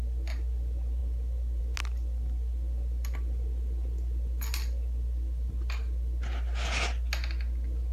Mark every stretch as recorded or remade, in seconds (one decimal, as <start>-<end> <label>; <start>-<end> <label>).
0.0-7.9 recorded